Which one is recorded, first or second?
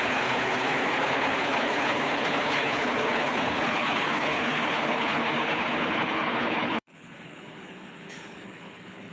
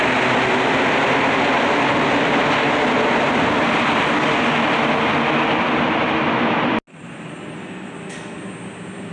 second